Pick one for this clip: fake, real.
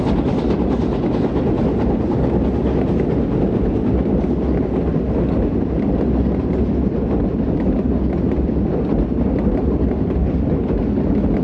real